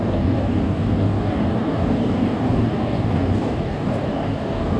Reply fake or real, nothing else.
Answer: fake